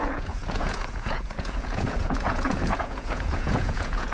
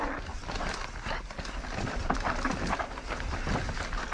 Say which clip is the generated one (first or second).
first